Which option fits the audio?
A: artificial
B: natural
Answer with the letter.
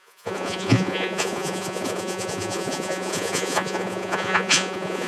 A